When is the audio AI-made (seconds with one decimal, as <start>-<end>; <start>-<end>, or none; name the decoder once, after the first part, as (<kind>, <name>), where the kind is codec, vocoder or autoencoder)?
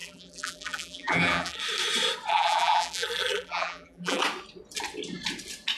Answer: 0.0-1.6 (vocoder, BigVGAN v2); 2.3-4.2